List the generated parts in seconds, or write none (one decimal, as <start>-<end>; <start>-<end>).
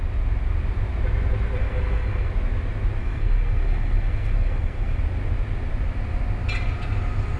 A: 1.6-2.3; 3.0-5.0